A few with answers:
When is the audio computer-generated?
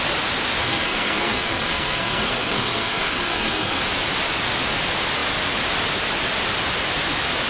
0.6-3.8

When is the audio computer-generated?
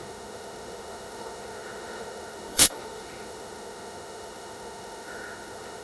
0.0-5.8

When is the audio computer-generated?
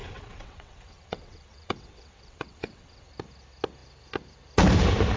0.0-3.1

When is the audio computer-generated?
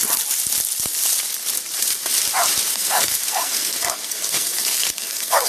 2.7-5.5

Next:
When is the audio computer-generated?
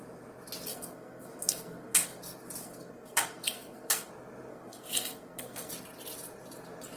0.7-2.2; 2.6-4.1; 4.5-5.7